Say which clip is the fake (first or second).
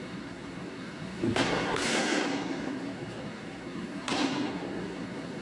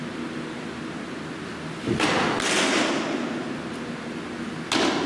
first